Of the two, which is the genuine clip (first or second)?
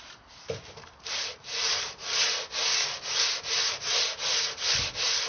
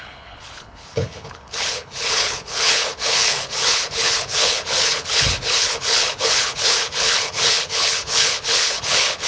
first